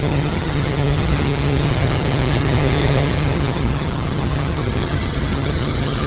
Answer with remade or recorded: remade